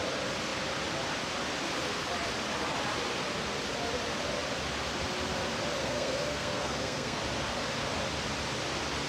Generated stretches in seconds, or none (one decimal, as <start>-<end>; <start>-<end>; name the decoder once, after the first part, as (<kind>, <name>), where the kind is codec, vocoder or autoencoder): 5.8-7.2 (codec, SNAC)